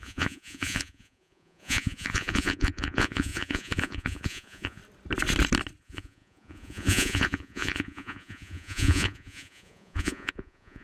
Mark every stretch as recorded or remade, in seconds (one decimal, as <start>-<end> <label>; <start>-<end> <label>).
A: 0.0-4.8 remade; 4.8-5.8 recorded; 5.8-10.8 remade